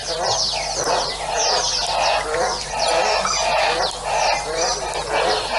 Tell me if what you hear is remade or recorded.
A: recorded